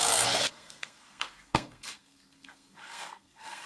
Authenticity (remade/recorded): remade